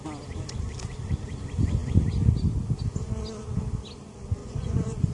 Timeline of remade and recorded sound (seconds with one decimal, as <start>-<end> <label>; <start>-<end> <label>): 0.0-4.4 recorded; 4.4-5.1 remade